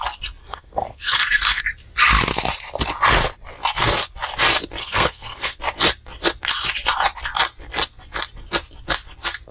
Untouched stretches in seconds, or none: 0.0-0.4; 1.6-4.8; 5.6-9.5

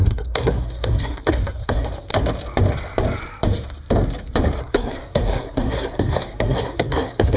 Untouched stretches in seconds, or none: 2.1-4.6

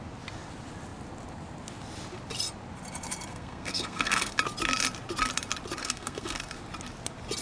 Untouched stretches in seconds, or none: 0.0-3.3; 4.3-5.8; 6.4-7.4

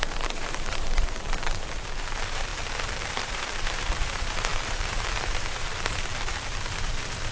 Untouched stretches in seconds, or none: none

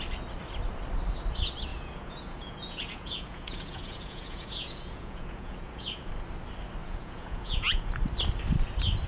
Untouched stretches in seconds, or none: 0.0-1.7; 6.1-6.8; 7.9-9.1